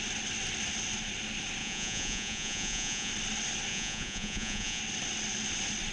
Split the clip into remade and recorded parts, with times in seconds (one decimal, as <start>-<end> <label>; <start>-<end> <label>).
0.0-1.6 recorded; 1.6-3.1 remade; 3.1-3.7 recorded; 3.7-4.8 remade; 4.8-5.9 recorded